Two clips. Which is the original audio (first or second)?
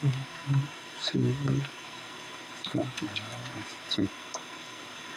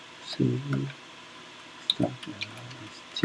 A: second